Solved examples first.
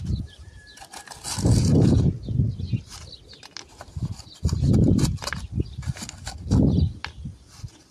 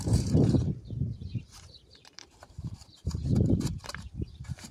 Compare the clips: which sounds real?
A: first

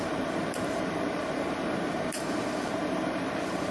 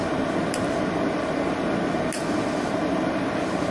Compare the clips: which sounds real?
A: second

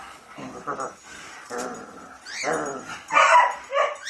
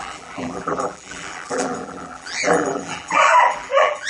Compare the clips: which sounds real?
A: first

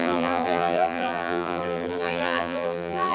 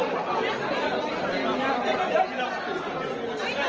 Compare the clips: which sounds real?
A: second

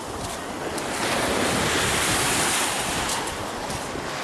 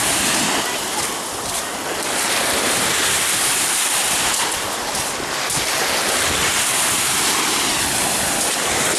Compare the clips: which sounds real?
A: first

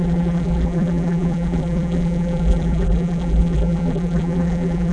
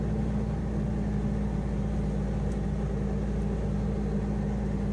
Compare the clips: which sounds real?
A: second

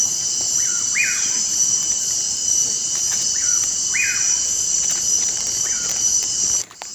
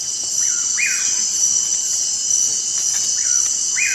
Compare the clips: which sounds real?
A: second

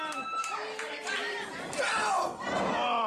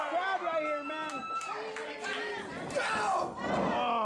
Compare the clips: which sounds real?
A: second